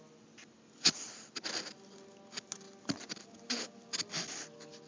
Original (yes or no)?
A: yes